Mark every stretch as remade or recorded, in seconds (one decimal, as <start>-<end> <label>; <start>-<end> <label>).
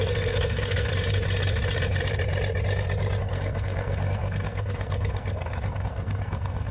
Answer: 0.0-0.9 remade; 0.9-3.2 recorded; 3.2-6.7 remade